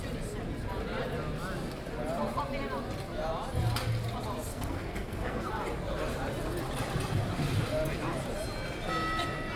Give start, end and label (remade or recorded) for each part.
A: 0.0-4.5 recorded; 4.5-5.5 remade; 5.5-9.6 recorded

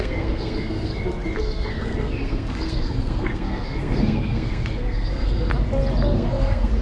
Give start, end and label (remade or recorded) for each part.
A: 0.0-0.9 remade; 0.9-1.4 recorded; 1.4-5.5 remade; 5.5-6.1 recorded; 6.1-6.8 remade

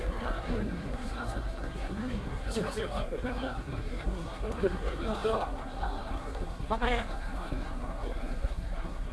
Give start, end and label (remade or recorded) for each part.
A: 0.0-9.1 remade

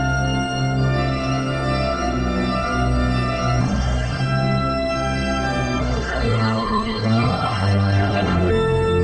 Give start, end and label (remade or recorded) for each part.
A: 0.0-3.6 recorded; 3.6-4.2 remade; 4.2-5.8 recorded; 5.8-8.5 remade; 8.5-9.0 recorded

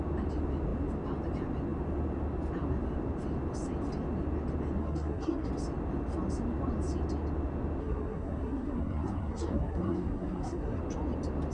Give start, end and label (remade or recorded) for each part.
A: 0.0-4.8 recorded; 4.8-5.5 remade; 5.5-7.8 recorded; 7.8-10.8 remade; 10.8-11.5 recorded